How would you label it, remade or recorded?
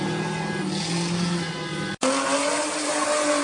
recorded